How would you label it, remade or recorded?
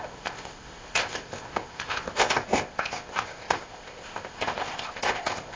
remade